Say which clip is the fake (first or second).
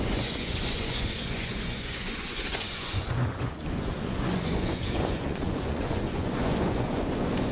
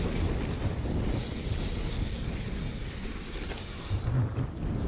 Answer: first